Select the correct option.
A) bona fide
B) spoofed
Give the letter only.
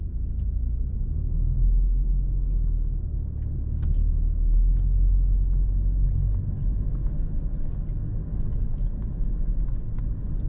A